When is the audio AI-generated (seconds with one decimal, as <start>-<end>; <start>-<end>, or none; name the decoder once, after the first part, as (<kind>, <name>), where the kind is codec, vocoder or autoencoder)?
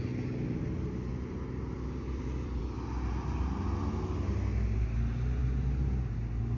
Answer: 1.1-2.6 (vocoder, BigVGAN v2)